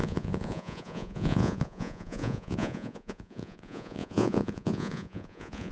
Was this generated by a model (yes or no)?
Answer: yes